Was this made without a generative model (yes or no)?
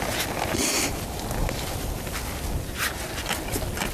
yes